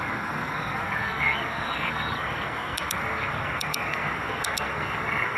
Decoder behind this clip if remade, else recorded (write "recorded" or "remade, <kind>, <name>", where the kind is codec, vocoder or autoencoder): remade, codec, SNAC